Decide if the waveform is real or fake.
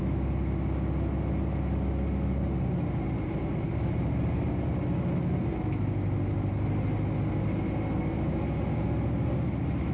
real